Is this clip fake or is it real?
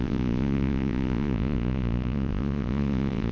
fake